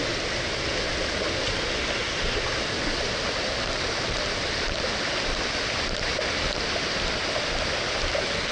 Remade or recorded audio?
recorded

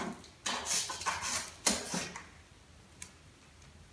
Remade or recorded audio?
recorded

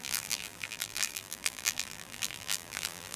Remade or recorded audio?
remade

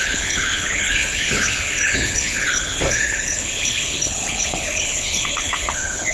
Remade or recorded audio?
remade